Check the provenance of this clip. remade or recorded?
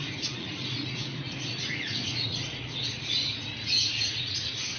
remade